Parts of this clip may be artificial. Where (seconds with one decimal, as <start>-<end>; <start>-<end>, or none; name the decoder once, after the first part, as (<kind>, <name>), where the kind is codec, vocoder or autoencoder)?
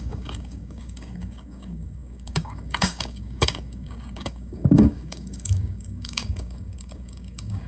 0.0-7.7 (codec, DAC)